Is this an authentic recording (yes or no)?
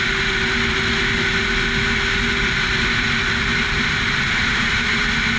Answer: yes